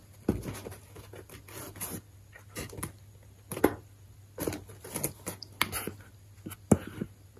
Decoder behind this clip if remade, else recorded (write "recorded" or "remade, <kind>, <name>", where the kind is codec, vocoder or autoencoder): recorded